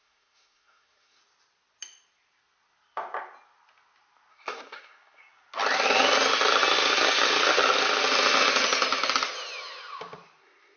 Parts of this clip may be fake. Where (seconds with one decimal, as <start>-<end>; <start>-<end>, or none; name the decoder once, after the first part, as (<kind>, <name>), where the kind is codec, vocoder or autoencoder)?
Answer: 0.0-1.2 (codec, SNAC); 4.3-5.2; 10.4-10.8

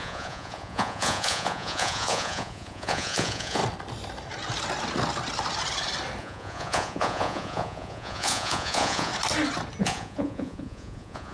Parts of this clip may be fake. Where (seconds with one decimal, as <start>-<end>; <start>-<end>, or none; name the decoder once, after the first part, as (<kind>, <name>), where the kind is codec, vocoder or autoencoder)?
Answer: 0.0-3.6 (vocoder, Vocos); 6.2-9.1; 9.8-11.3

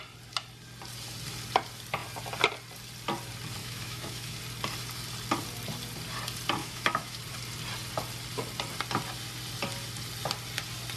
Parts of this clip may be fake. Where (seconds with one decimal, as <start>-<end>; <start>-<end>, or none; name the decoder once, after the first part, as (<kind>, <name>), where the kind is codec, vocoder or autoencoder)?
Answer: 3.6-4.4 (autoencoder, DAC-VAE); 6.6-7.2

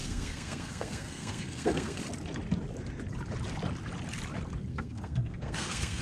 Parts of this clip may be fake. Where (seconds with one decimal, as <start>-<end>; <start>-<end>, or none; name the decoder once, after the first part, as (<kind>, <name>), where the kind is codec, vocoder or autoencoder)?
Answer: 0.0-2.0 (codec, SNAC); 4.7-6.0